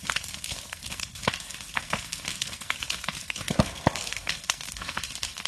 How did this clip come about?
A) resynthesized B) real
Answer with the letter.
A